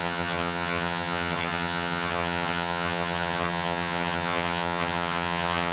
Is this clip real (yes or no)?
no